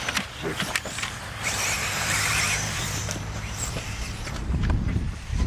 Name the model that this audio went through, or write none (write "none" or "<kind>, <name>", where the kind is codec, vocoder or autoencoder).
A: vocoder, BigVGAN v2